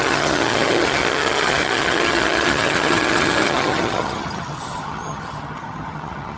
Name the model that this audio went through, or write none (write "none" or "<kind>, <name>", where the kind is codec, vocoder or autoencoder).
vocoder, HiFi-GAN